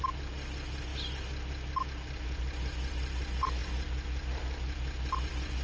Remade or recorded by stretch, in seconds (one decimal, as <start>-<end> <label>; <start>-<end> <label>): 0.0-5.6 recorded